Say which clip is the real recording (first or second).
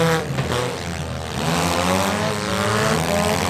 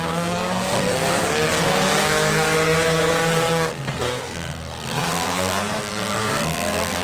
first